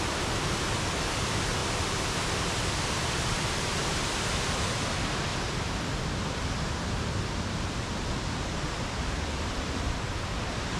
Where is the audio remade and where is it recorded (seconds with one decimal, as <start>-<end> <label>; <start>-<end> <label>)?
0.0-1.6 recorded; 1.6-4.7 remade; 4.7-5.3 recorded; 5.3-10.1 remade; 10.1-10.8 recorded